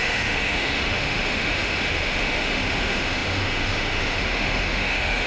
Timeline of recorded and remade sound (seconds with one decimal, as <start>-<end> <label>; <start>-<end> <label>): 0.0-5.3 remade